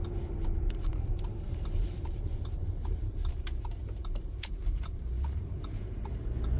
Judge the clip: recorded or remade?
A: remade